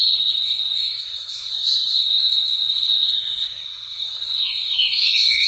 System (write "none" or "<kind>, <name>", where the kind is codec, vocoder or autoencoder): codec, SNAC